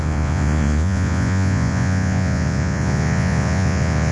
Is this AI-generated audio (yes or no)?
yes